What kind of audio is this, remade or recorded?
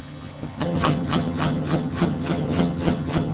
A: remade